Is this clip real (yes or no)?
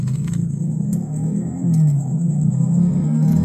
no